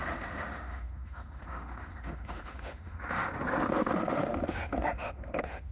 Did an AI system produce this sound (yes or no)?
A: yes